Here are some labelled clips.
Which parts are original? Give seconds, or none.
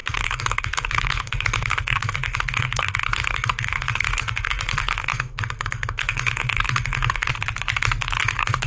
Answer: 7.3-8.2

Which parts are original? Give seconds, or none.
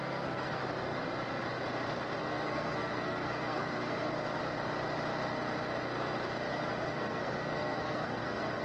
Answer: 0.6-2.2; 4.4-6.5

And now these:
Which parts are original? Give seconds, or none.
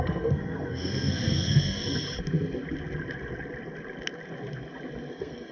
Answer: 1.8-5.1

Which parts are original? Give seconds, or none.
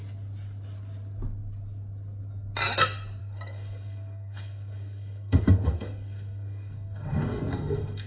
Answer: 0.0-3.2